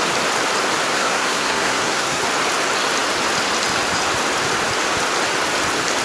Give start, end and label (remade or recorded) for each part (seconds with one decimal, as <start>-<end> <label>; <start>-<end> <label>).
0.0-0.9 recorded; 0.9-2.2 remade; 2.2-6.0 recorded

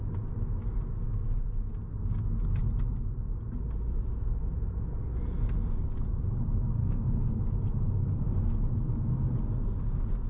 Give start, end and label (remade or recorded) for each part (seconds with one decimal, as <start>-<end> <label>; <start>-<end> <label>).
0.0-6.8 recorded; 6.8-7.3 remade; 7.3-10.3 recorded

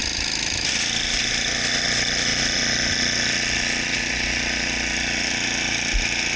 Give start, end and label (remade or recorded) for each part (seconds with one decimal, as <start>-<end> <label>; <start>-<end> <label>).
0.0-6.4 recorded